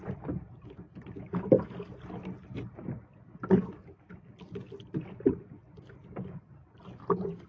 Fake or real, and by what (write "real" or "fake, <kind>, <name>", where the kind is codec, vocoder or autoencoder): real